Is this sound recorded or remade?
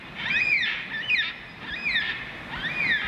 recorded